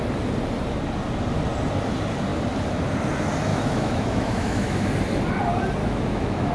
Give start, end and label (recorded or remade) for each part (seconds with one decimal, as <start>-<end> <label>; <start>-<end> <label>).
0.0-3.5 recorded; 3.5-4.9 remade; 4.9-5.8 recorded; 5.8-6.5 remade